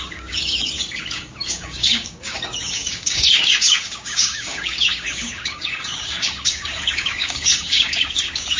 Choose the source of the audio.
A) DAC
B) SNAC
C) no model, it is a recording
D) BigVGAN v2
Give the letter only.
A